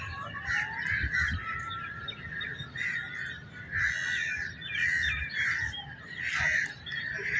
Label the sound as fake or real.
real